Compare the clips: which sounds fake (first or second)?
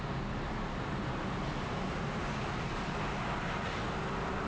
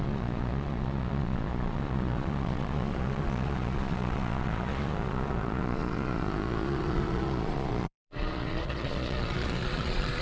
second